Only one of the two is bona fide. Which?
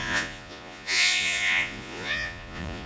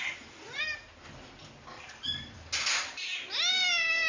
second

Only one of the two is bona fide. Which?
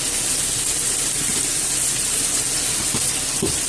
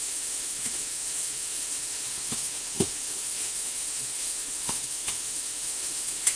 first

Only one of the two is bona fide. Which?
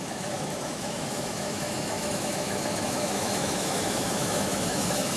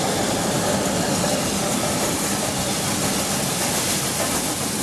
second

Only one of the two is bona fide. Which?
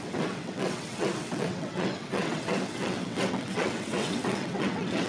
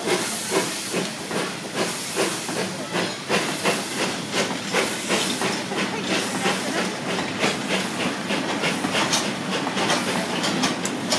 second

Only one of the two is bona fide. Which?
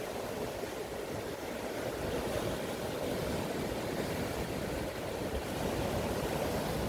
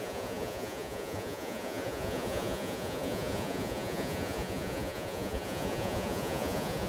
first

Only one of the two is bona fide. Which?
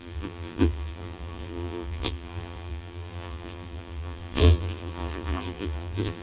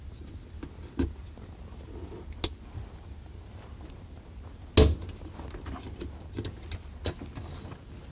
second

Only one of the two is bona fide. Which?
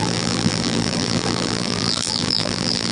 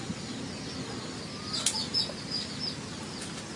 second